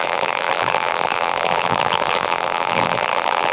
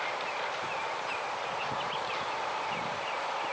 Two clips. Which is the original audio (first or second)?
second